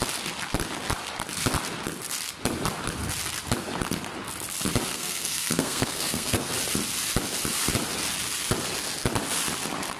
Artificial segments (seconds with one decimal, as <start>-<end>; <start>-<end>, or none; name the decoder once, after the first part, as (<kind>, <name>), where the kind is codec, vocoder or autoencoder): 4.9-6.5 (codec, SNAC)